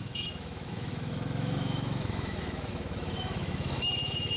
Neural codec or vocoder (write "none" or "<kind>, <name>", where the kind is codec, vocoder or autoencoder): autoencoder, DAC-VAE